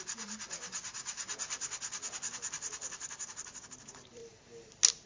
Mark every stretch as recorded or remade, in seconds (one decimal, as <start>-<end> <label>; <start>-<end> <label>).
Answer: 0.0-4.2 remade; 4.2-5.1 recorded